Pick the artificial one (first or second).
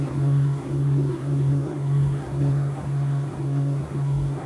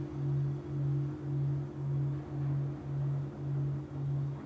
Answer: first